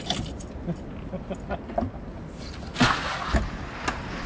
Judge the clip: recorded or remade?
recorded